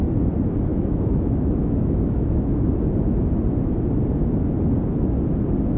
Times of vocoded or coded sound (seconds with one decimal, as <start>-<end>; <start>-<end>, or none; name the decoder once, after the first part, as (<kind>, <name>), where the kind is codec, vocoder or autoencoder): 0.7-2.6 (autoencoder, DAC-VAE)